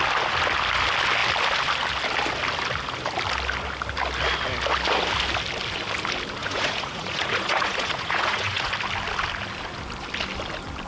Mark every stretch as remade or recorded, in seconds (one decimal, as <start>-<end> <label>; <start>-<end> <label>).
0.0-6.4 recorded; 6.4-8.7 remade; 8.7-10.9 recorded